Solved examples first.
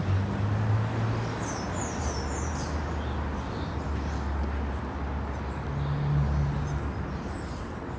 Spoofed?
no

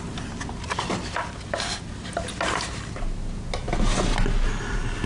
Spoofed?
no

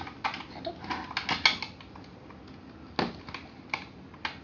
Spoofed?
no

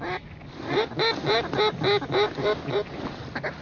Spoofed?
no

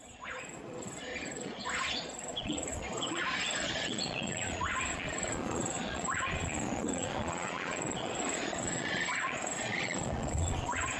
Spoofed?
yes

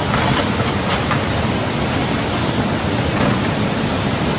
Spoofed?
no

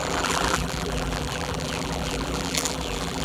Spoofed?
yes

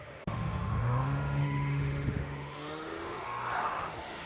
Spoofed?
yes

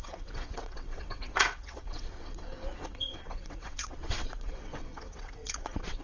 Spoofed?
yes